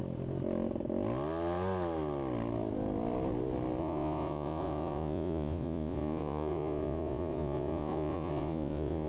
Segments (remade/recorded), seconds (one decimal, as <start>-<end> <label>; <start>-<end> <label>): 0.0-3.8 recorded; 3.8-9.1 remade